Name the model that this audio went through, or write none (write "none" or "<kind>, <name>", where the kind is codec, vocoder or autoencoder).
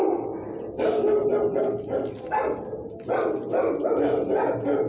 none